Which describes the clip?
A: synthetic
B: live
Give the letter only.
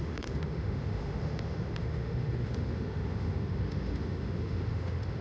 A